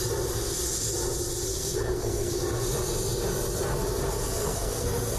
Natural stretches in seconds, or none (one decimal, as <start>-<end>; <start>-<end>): 0.0-1.5; 2.3-4.4